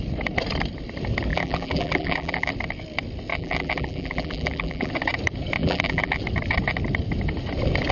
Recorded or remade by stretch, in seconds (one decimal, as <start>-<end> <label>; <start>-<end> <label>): 0.0-1.3 recorded; 1.3-2.5 remade; 2.5-3.3 recorded; 3.3-4.9 remade; 4.9-5.6 recorded; 5.6-6.2 remade; 6.2-7.9 recorded